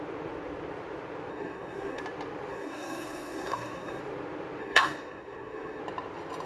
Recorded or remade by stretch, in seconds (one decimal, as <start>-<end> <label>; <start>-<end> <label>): 0.0-1.3 recorded; 1.3-2.0 remade; 2.0-2.5 recorded; 2.5-4.0 remade; 4.0-4.6 recorded; 4.6-5.8 remade; 5.8-6.5 recorded